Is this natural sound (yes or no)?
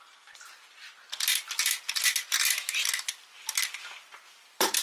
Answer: yes